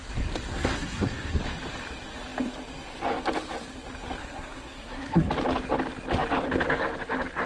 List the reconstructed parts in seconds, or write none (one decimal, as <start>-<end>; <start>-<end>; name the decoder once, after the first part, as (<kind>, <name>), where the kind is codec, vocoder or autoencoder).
0.5-1.4 (codec, SNAC); 4.2-5.3